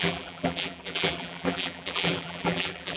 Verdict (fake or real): fake